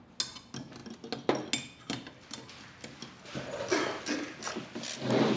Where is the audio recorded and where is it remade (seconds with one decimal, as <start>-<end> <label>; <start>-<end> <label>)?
0.0-5.4 recorded

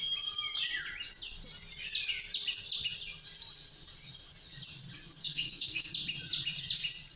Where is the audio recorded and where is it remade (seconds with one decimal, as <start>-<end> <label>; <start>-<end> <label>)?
0.0-5.2 recorded; 5.2-5.9 remade; 5.9-7.2 recorded

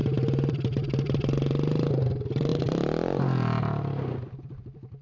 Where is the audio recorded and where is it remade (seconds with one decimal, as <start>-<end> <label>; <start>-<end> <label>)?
0.0-2.1 recorded; 2.1-2.5 remade; 2.5-4.4 recorded; 4.4-5.0 remade